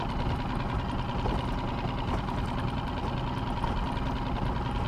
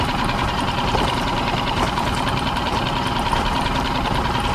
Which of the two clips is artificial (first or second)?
second